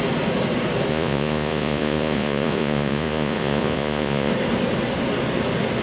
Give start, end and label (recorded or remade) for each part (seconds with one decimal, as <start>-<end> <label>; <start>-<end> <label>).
0.0-0.9 recorded; 0.9-4.3 remade; 4.3-5.8 recorded